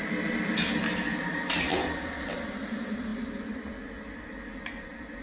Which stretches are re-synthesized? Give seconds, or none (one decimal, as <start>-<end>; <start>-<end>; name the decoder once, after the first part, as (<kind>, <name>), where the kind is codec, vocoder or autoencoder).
none